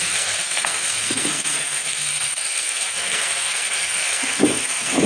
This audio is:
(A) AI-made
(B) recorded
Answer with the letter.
A